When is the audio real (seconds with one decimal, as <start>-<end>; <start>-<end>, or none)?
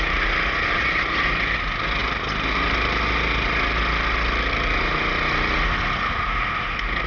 0.0-7.1